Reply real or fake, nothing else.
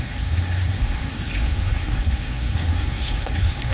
fake